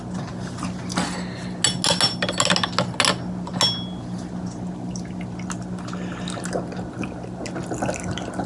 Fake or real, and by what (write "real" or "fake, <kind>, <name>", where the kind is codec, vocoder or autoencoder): real